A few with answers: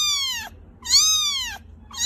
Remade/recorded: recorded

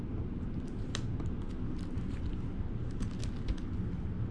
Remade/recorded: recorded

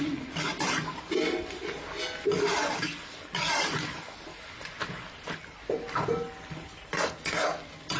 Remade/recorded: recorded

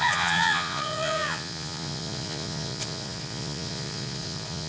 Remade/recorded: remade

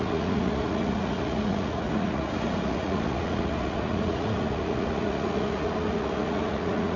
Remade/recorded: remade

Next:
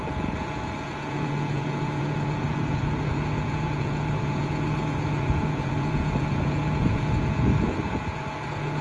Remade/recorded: remade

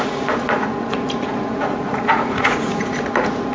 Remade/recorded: remade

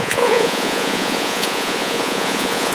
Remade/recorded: remade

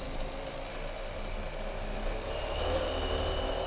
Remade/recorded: recorded